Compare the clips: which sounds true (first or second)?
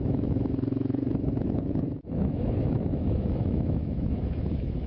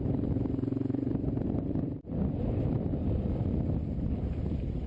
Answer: second